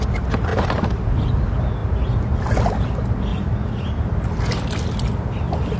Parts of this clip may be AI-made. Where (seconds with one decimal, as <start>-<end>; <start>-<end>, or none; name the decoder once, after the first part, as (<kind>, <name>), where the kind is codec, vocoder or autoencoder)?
0.5-1.3 (vocoder, BigVGAN v2); 3.3-4.1